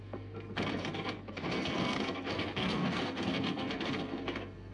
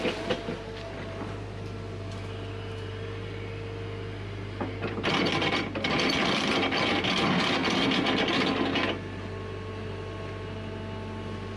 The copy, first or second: first